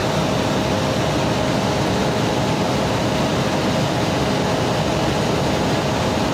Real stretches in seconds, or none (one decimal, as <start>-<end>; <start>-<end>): 0.0-6.3